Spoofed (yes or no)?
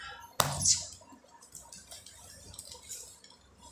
no